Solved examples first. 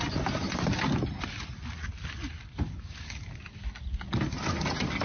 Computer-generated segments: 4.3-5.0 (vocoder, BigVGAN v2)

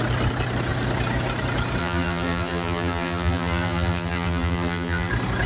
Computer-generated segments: 1.8-5.1 (vocoder, BigVGAN v2)

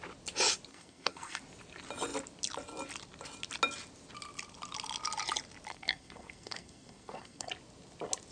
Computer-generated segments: 0.7-1.4 (codec, SNAC); 5.7-7.5

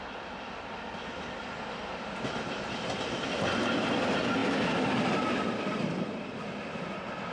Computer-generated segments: none

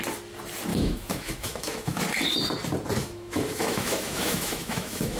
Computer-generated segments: 0.7-2.0 (autoencoder, DAC-VAE); 3.0-5.2

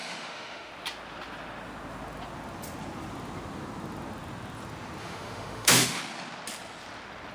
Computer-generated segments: 0.0-0.7 (autoencoder, DAC-VAE); 5.0-6.0